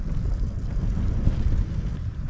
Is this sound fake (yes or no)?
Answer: no